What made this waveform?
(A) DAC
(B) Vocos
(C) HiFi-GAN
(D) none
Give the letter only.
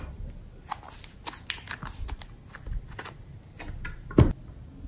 D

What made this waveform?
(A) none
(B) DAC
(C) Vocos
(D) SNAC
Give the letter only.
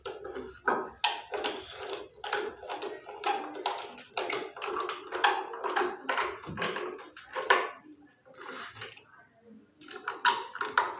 A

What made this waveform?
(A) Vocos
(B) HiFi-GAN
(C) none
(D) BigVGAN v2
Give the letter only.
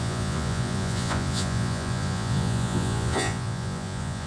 A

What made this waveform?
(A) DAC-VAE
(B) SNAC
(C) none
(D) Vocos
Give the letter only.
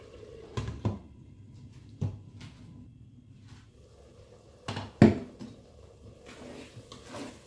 C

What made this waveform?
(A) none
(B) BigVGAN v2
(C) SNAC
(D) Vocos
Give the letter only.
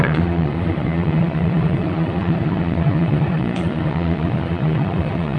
D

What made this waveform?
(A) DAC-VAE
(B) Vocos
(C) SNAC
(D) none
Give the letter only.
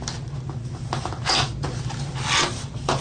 D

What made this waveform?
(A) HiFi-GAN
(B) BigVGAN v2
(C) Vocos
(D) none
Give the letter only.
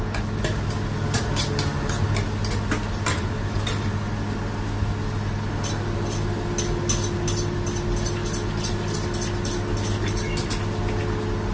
D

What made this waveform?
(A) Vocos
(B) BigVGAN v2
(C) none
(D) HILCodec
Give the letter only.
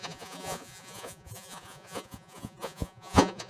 A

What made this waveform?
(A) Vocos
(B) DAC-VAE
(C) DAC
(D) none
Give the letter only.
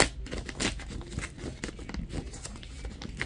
D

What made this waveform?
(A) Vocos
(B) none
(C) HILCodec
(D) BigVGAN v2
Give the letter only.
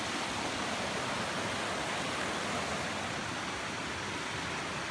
B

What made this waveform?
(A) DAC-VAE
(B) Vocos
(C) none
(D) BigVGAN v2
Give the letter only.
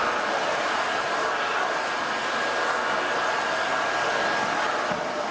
C